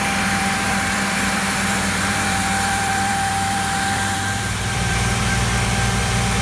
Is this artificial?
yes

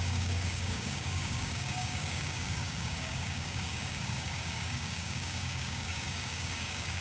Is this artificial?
yes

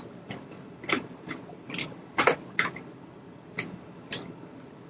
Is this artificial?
no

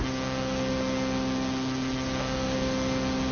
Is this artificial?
no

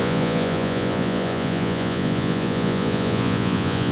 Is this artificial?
yes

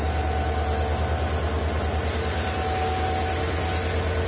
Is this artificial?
no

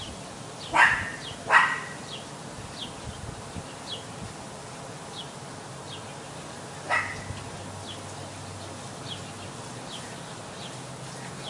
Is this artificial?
no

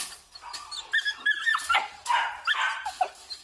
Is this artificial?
no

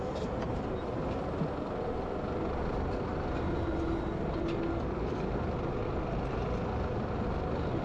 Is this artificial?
no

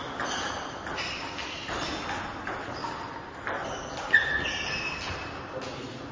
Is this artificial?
no